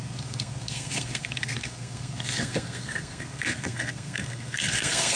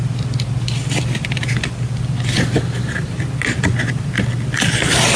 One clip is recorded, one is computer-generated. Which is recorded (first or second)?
second